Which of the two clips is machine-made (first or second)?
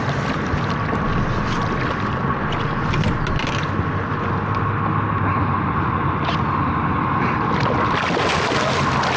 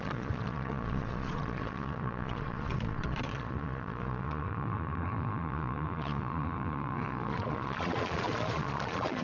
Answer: second